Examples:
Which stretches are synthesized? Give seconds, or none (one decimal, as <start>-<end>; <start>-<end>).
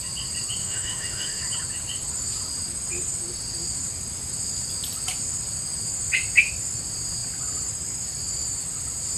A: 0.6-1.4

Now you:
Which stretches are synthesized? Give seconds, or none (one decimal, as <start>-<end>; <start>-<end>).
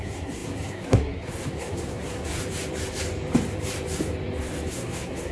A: 0.0-2.4; 4.7-5.3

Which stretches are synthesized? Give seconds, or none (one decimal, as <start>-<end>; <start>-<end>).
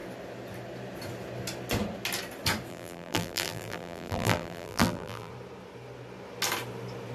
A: 2.7-5.3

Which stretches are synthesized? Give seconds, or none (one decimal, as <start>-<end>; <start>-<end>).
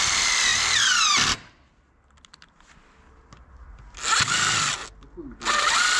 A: 0.0-0.5; 3.4-4.8; 5.5-6.0